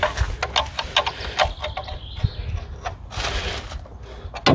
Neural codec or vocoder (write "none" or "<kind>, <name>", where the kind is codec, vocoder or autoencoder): none